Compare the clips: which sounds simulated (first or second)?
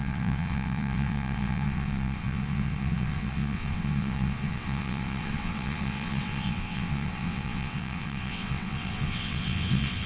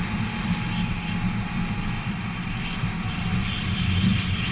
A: first